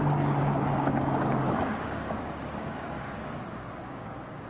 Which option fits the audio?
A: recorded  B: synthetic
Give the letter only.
B